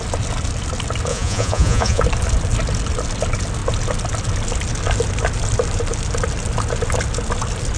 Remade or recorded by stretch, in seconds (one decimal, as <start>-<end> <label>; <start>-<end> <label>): 0.0-1.1 recorded; 1.1-2.0 remade; 2.0-7.8 recorded